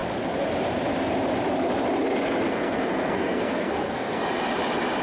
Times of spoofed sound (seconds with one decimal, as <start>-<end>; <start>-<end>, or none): 2.5-4.2